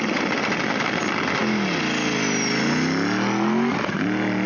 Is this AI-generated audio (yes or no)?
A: no